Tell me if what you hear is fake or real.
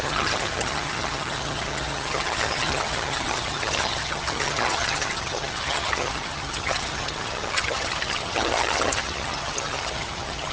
fake